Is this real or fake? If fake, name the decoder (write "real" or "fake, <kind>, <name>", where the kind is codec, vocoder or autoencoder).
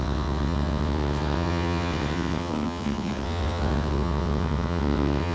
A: fake, vocoder, WaveNeXt